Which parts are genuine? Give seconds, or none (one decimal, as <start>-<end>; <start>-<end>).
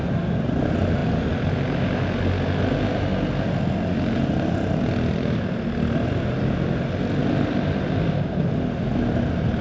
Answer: 0.0-9.6